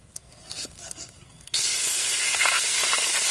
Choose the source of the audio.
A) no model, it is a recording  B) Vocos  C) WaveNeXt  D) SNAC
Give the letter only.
D